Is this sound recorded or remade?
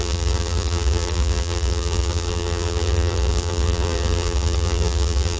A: remade